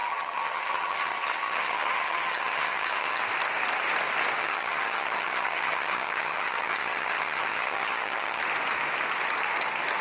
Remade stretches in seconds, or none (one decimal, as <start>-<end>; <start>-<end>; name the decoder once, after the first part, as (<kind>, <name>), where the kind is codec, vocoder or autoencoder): 0.0-3.2 (vocoder, HiFi-GAN); 4.4-8.4